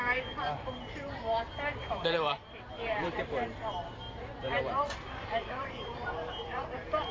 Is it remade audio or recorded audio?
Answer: remade